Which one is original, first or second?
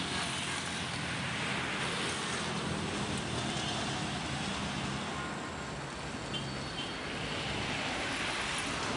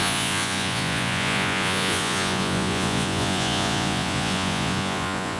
first